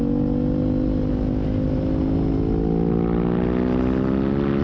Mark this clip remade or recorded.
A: recorded